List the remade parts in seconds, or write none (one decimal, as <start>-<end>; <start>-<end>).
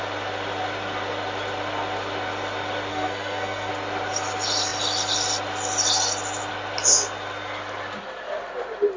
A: 2.9-3.7